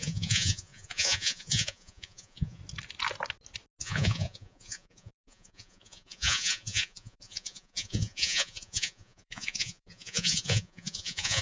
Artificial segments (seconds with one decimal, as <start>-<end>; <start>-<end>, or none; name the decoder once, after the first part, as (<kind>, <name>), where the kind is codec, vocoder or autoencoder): 0.0-2.6 (vocoder, Vocos); 3.8-11.4